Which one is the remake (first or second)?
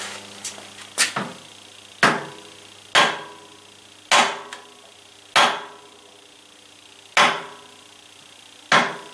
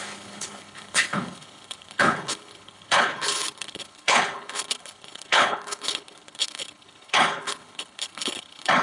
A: second